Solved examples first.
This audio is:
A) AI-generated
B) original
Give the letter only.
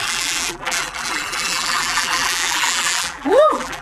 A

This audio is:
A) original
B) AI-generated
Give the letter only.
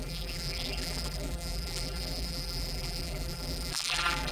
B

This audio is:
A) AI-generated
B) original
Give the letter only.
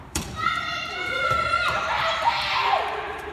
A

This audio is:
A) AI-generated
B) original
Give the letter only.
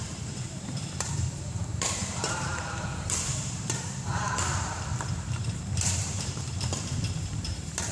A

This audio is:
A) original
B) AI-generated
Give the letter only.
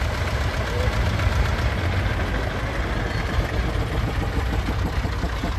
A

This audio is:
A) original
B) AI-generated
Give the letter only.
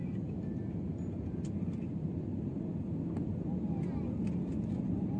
A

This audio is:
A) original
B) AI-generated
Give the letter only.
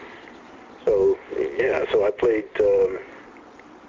A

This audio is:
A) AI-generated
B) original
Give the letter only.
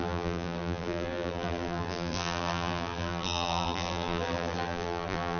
A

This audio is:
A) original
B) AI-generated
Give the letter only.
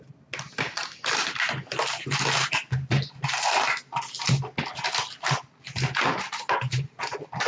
A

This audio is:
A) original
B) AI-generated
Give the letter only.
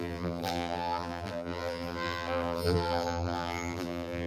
B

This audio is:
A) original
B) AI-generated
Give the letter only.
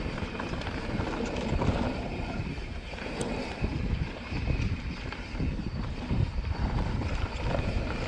B